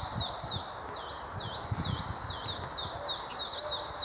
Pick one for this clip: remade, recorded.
recorded